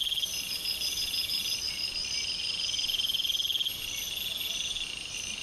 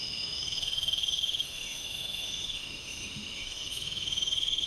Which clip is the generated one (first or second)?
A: second